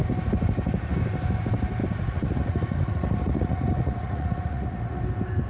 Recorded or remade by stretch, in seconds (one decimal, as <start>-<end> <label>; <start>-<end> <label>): 0.0-1.8 recorded; 1.8-5.0 remade; 5.0-5.5 recorded